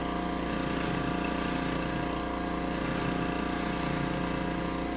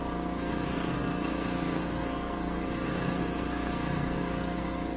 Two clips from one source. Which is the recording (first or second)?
first